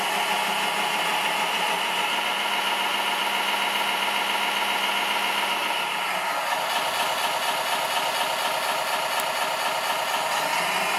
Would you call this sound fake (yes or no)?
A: no